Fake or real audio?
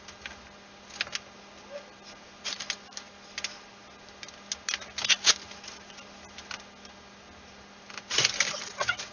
real